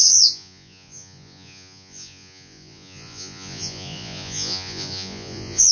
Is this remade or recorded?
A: remade